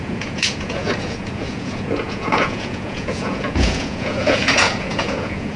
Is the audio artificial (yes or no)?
yes